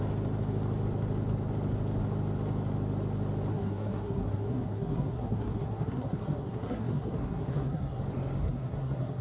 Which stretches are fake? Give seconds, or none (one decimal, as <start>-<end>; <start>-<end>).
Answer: 3.5-8.0; 8.4-9.2